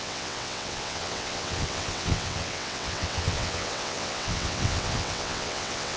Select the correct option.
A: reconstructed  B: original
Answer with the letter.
A